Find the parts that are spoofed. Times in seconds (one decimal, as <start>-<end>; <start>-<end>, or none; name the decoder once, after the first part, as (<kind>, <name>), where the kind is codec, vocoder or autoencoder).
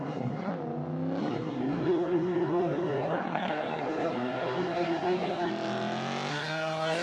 0.0-0.5 (codec, SNAC); 1.2-5.5; 6.3-7.0